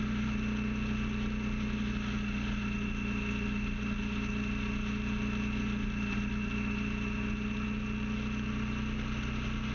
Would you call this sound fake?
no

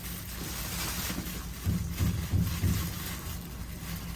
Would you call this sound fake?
no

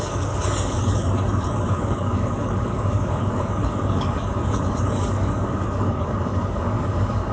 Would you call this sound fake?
yes